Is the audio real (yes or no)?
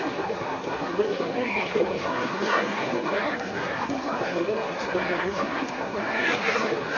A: no